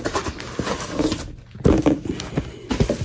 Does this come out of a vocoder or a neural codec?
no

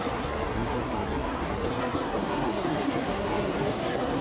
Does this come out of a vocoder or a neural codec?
yes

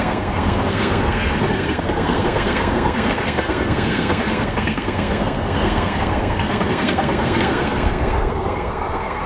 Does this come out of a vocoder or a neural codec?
yes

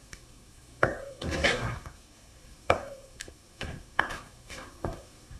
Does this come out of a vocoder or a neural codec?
yes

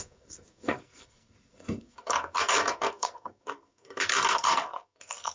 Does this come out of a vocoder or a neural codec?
yes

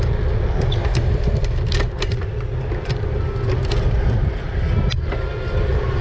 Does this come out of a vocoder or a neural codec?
no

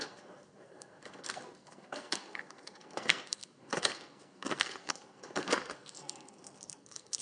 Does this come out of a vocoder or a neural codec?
yes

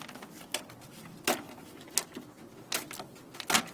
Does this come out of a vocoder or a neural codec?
no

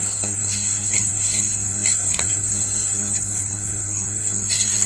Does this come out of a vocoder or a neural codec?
yes